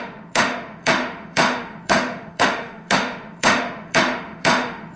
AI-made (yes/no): yes